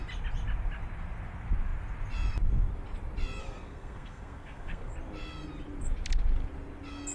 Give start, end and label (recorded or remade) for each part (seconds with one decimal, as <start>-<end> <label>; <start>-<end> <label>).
0.0-3.4 recorded; 3.4-4.9 remade; 4.9-7.1 recorded